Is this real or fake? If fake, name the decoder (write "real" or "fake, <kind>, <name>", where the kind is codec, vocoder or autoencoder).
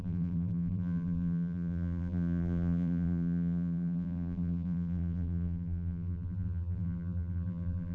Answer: fake, vocoder, BigVGAN v2